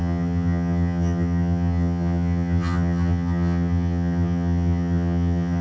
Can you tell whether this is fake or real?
fake